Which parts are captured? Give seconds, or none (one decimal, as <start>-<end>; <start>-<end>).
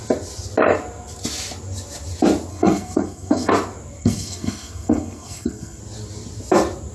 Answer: 0.0-2.5; 3.5-4.0; 5.8-6.9